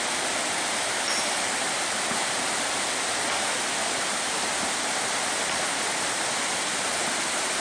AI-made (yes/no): no